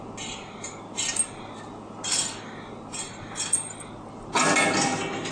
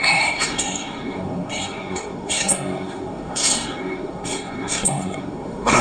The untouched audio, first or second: first